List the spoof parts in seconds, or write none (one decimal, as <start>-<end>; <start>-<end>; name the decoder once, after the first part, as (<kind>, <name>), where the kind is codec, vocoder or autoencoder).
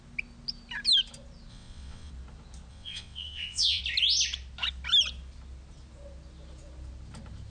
1.5-2.1 (vocoder, WaveNeXt); 2.7-3.8